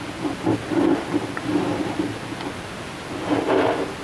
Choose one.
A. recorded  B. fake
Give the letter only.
A